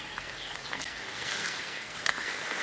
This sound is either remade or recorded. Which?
remade